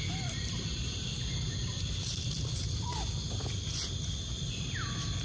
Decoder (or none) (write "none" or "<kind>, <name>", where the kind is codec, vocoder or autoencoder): none